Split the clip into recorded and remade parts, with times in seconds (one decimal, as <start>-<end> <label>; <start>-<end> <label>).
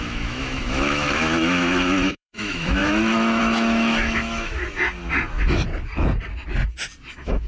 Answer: 0.0-4.6 remade; 4.6-7.1 recorded; 7.1-7.5 remade